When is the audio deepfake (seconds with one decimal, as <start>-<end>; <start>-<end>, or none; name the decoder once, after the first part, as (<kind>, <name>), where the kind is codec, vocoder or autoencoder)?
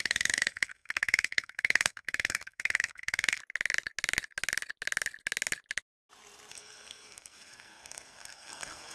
0.0-3.4 (codec, SNAC); 6.5-8.9